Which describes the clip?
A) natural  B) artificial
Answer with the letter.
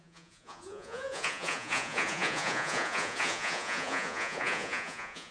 B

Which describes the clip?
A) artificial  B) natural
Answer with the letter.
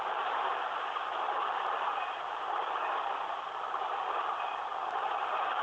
B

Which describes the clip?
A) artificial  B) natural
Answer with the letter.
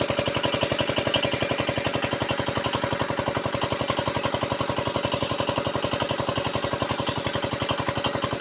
B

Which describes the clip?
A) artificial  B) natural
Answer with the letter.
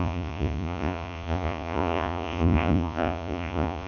A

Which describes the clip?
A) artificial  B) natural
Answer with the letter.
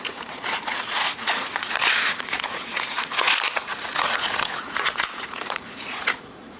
A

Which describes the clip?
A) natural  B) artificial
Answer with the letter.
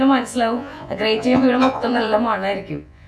B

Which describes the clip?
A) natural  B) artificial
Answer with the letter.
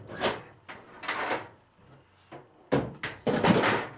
A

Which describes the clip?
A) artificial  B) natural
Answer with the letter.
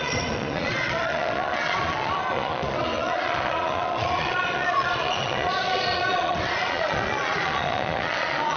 A